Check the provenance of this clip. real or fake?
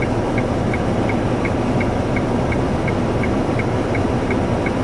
real